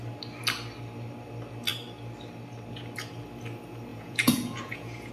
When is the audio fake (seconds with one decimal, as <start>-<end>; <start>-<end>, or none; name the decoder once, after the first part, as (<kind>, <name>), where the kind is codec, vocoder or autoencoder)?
3.9-5.1 (vocoder, Vocos)